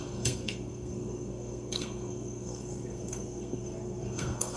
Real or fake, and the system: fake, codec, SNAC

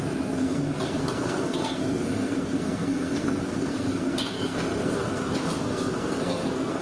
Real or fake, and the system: fake, codec, SNAC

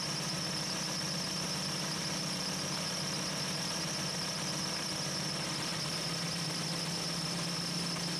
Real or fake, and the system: real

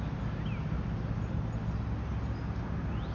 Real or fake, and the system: real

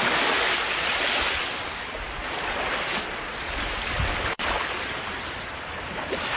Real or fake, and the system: real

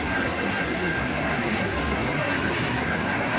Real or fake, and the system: fake, codec, SNAC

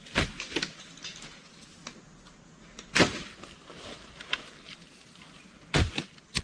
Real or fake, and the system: real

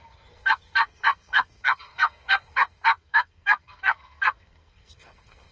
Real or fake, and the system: fake, codec, SNAC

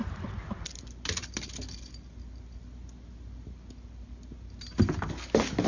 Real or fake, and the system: real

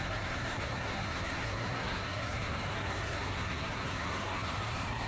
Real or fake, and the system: fake, codec, SNAC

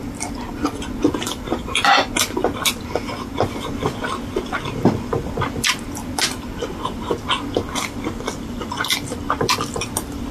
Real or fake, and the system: real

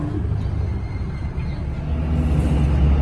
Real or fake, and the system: real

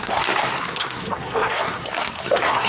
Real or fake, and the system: fake, codec, SNAC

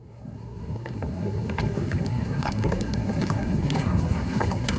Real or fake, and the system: fake, codec, SNAC